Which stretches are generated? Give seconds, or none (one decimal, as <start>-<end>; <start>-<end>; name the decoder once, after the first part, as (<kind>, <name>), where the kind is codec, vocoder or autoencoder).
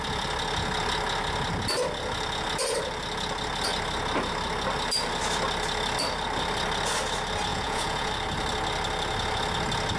7.5-8.1 (vocoder, Vocos)